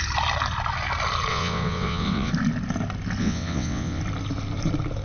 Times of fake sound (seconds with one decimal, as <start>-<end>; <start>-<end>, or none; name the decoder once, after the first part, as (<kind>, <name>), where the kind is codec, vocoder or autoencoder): 1.3-2.3 (vocoder, WaveNeXt); 3.2-4.0